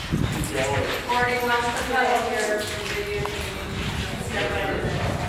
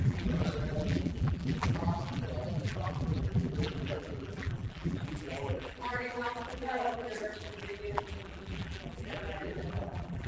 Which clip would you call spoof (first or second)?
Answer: second